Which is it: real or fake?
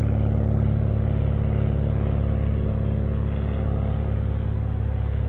real